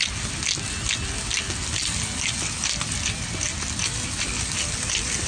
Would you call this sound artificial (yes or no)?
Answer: no